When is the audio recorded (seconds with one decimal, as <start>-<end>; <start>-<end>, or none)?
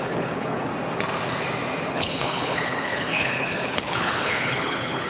0.7-1.9